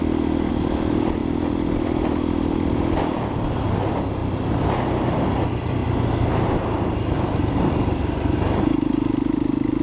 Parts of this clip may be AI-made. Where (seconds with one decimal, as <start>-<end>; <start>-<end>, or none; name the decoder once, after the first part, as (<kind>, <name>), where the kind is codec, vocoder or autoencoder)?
0.5-4.2 (vocoder, BigVGAN v2); 5.0-5.8; 7.4-9.8